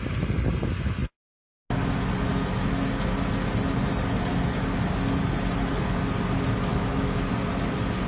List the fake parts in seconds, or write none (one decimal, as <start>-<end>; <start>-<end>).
6.7-7.3